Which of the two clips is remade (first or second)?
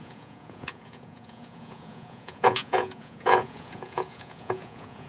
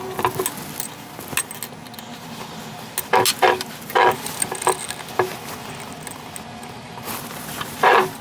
first